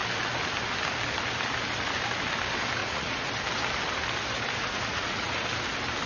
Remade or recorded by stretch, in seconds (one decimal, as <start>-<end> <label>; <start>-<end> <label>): 0.0-2.8 recorded; 2.8-3.3 remade; 3.3-4.6 recorded; 4.6-5.3 remade; 5.3-6.1 recorded